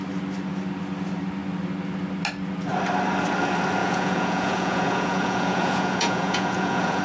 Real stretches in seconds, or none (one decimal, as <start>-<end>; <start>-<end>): 0.0-3.8